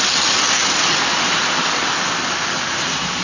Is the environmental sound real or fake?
real